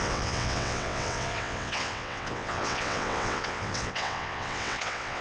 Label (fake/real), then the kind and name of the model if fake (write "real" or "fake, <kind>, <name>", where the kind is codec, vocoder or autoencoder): fake, vocoder, WaveNeXt